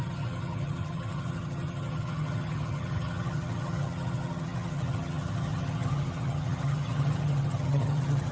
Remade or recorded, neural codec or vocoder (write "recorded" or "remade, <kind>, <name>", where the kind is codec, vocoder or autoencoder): remade, vocoder, HiFi-GAN